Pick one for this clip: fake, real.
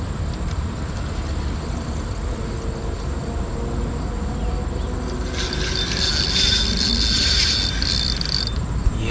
real